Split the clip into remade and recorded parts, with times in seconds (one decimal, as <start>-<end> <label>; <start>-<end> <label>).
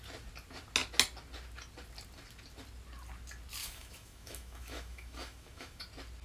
0.0-3.6 recorded; 3.6-5.8 remade; 5.8-6.2 recorded